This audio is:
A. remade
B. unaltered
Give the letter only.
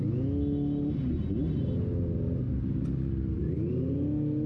B